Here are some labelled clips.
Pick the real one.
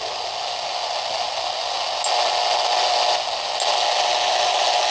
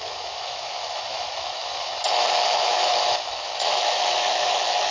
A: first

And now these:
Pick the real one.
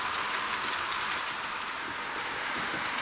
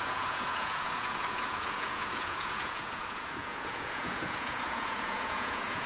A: first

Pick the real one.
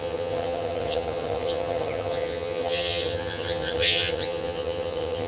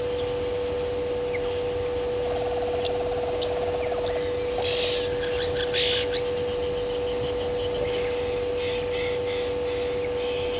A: second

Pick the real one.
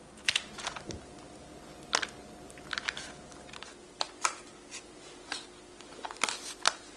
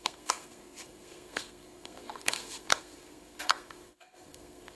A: first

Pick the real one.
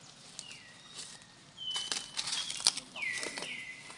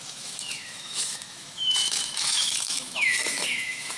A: first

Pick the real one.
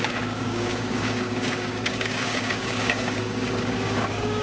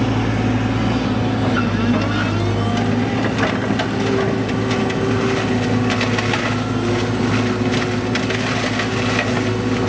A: second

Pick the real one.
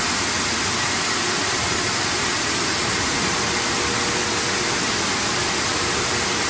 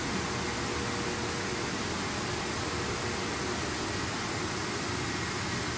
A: second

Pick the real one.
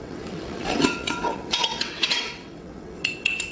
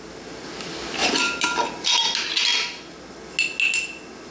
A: second